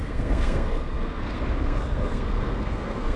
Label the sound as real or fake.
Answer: fake